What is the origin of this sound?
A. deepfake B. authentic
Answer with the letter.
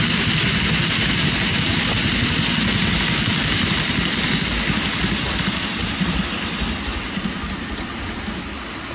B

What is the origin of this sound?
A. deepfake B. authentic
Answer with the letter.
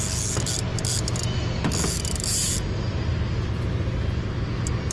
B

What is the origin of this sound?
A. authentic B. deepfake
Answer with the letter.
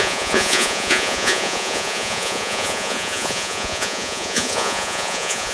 B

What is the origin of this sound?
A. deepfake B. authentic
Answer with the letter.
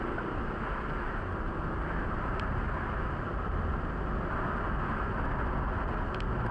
B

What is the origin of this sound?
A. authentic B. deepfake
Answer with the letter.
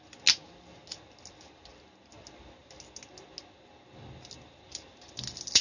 A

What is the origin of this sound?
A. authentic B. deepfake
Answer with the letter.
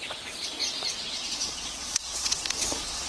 B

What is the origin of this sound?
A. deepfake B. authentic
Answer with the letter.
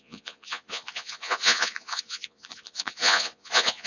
A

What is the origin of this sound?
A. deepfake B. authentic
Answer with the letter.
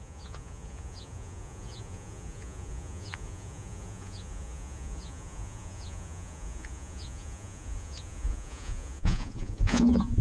A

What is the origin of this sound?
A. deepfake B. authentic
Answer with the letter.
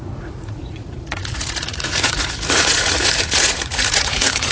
A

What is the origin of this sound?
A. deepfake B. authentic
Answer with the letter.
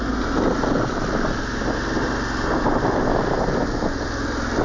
B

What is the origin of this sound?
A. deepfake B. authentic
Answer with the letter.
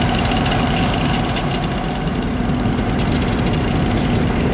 B